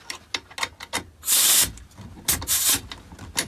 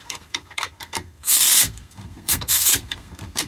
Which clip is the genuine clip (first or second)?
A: first